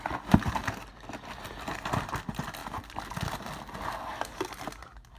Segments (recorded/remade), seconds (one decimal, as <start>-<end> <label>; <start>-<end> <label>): 0.0-0.6 remade; 0.6-1.5 recorded; 1.5-2.6 remade; 2.6-4.8 recorded; 4.8-5.2 remade